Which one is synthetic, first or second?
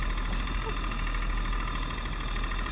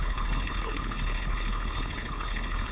second